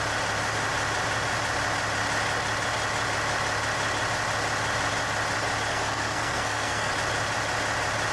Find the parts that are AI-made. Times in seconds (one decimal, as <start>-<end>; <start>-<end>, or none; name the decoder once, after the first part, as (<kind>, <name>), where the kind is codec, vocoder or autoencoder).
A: 5.7-6.9 (codec, SNAC)

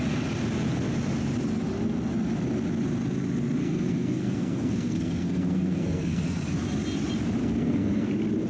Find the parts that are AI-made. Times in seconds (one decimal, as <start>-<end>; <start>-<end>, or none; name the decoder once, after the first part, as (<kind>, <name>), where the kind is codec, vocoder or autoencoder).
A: 3.6-6.2 (codec, SNAC); 7.4-8.1

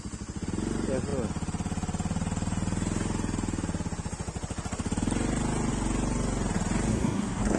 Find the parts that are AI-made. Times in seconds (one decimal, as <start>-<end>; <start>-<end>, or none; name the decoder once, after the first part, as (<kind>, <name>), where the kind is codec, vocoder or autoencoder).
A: 6.9-7.6 (codec, SNAC)

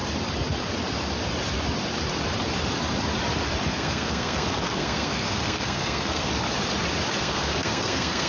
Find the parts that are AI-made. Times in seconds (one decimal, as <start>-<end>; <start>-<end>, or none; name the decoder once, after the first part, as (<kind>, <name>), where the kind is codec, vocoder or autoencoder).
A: 3.7-6.3 (codec, SNAC); 7.2-8.3

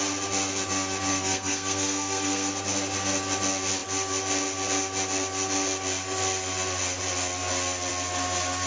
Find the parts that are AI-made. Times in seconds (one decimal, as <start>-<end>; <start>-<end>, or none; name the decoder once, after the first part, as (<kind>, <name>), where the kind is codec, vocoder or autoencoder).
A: 1.1-2.5 (codec, SNAC)

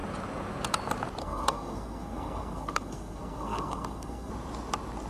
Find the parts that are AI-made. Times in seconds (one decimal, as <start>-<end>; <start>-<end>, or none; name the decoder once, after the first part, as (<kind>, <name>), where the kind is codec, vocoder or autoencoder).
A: 1.2-4.3 (codec, SNAC)